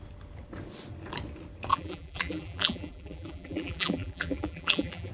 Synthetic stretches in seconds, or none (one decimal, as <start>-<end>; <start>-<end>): 1.7-5.1